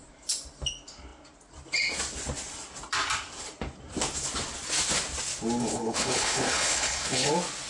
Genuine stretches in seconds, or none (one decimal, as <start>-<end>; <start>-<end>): 0.0-5.7; 7.3-7.7